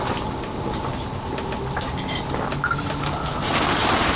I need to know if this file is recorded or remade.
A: recorded